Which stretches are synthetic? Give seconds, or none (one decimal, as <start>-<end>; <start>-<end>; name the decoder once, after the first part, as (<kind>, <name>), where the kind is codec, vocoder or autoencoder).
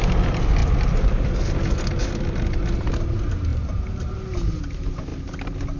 none